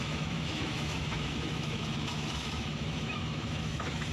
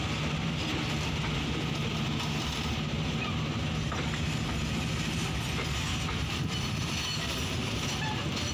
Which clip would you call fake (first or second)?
first